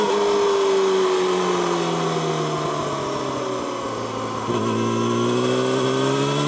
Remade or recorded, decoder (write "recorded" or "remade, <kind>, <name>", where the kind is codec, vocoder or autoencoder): recorded